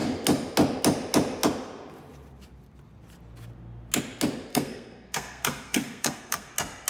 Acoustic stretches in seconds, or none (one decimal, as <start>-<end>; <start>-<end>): 0.0-4.5; 6.5-6.9